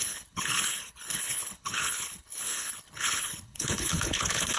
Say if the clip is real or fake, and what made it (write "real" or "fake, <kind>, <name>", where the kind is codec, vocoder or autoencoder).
fake, codec, HILCodec